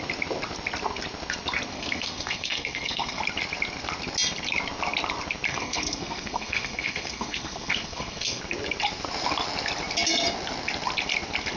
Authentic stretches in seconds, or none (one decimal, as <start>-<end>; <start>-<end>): 0.0-1.7; 3.2-5.5; 8.4-11.6

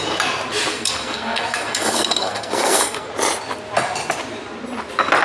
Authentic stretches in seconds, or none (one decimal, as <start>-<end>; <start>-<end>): 0.0-0.7; 3.1-5.2

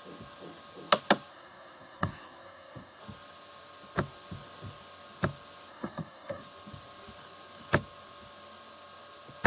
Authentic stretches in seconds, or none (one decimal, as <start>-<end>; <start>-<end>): 0.0-1.3; 3.0-5.7; 6.4-9.5